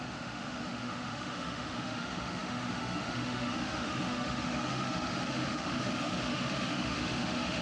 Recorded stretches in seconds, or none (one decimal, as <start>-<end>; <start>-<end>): none